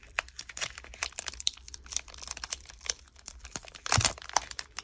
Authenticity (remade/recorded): remade